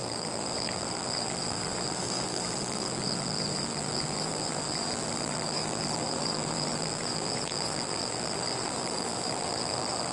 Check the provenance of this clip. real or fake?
fake